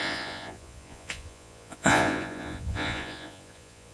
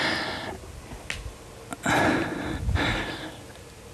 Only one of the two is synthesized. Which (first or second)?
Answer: first